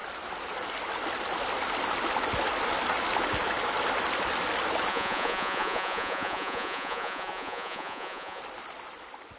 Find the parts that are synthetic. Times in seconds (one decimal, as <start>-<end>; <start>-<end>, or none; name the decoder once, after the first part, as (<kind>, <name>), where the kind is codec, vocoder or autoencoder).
4.9-8.4 (vocoder, Vocos)